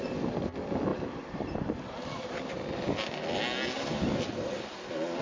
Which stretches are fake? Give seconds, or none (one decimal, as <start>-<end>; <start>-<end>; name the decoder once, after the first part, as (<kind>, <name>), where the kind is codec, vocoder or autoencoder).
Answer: 0.9-2.5 (vocoder, BigVGAN v2)